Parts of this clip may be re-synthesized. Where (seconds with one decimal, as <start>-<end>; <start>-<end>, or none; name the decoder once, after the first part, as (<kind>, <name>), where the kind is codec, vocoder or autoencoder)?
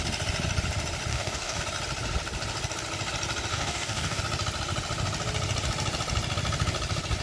1.1-1.6 (codec, DAC); 3.5-4.2